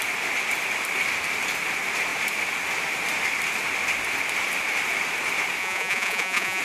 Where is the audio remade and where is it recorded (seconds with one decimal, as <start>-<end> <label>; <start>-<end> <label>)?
0.0-5.6 recorded; 5.6-6.6 remade